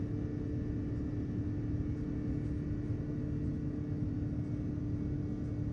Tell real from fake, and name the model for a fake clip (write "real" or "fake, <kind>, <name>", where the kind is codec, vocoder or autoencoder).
real